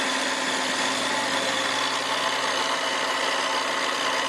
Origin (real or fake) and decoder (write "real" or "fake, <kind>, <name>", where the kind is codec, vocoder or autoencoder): real